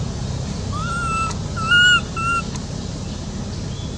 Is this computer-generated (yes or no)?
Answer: no